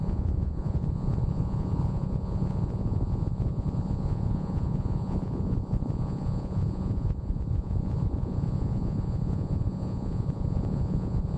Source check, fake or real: fake